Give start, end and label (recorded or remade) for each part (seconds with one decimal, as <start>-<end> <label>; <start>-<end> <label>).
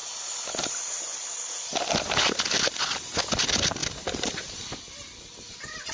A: 0.0-5.9 recorded